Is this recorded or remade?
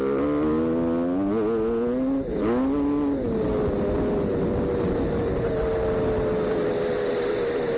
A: recorded